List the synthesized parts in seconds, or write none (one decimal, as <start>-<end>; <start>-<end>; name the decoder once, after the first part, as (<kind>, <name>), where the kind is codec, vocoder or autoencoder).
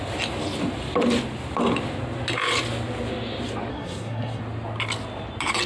3.7-4.4 (codec, SNAC)